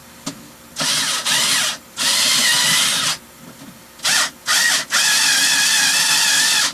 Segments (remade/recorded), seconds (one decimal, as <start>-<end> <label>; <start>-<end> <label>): 0.0-6.7 recorded